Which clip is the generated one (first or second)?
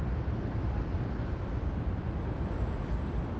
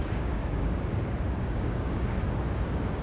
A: second